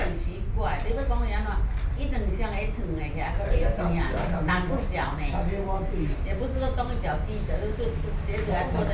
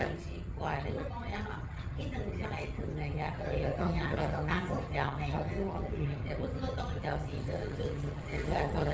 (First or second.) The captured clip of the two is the first